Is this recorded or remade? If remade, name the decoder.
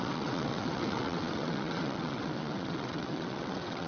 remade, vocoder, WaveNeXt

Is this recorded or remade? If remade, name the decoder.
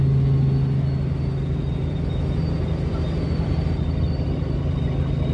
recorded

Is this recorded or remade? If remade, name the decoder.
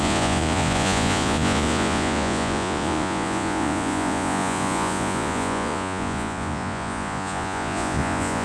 remade, vocoder, Vocos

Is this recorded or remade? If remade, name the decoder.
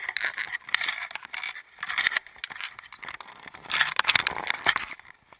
recorded